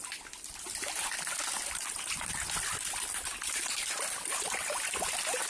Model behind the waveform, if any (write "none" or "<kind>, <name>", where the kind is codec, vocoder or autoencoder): vocoder, BigVGAN v2